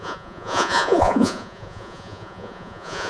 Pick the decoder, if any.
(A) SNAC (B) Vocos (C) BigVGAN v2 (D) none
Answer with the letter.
B